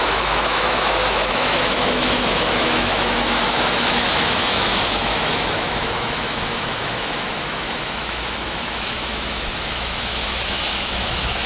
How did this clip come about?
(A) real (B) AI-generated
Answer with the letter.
B